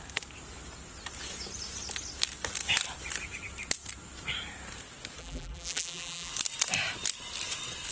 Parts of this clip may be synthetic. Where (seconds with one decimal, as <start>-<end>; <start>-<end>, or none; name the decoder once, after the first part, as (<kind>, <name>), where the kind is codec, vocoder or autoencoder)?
5.2-6.3 (vocoder, BigVGAN v2)